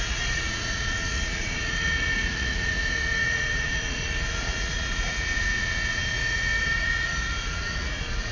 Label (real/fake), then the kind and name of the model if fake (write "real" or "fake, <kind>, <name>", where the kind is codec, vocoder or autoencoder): fake, vocoder, Vocos